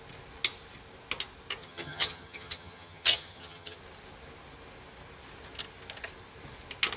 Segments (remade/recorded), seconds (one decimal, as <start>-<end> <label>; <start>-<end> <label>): 0.0-1.6 recorded; 1.6-3.8 remade; 3.8-7.0 recorded